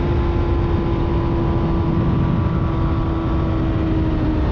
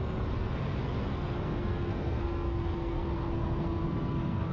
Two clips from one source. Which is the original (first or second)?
first